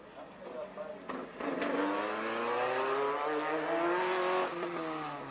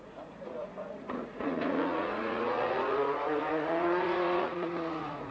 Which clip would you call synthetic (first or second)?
second